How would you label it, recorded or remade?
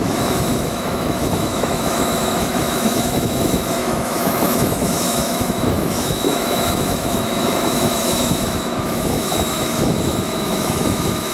remade